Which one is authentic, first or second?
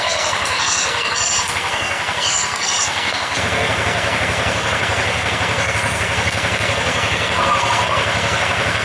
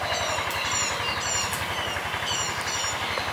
second